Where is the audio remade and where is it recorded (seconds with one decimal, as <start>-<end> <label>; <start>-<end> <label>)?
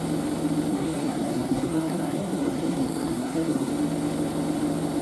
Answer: 0.0-0.7 recorded; 0.7-3.7 remade; 3.7-5.0 recorded